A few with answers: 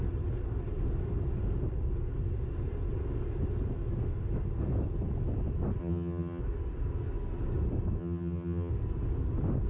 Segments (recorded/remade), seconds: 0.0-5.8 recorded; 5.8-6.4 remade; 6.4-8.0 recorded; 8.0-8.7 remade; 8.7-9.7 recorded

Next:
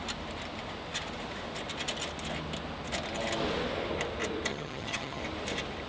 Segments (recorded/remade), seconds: 0.0-4.5 recorded; 4.5-5.2 remade; 5.2-5.9 recorded